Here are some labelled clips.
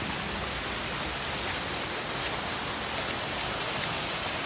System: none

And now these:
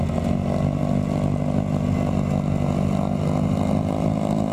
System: none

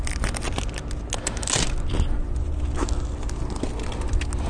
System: none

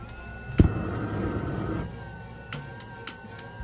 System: none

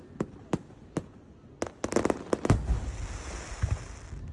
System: none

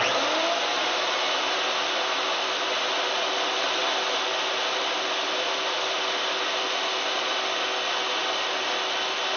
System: none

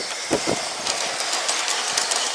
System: none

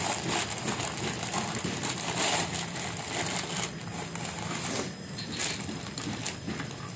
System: none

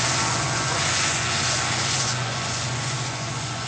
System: vocoder, Vocos